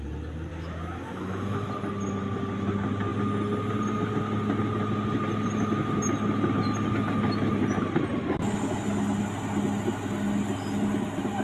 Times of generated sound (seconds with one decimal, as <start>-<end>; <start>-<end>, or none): 0.5-1.7